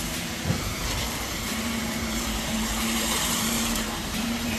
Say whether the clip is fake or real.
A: fake